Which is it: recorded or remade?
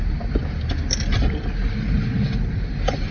recorded